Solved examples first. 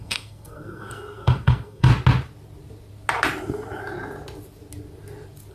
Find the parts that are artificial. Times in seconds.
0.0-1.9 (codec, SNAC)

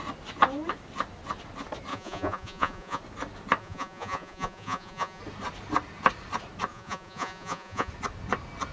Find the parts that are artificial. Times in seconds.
1.9-3.0 (vocoder, Vocos); 3.6-5.2; 6.7-7.9